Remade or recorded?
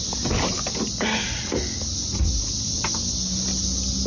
recorded